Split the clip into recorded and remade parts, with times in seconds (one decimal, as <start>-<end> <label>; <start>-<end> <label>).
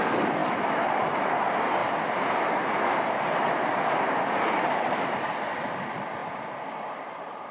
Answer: 0.0-1.8 recorded; 1.8-2.6 remade; 2.6-6.2 recorded; 6.2-7.0 remade; 7.0-7.5 recorded